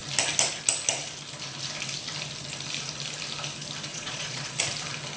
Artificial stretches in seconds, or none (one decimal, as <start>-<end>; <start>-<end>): 3.9-4.6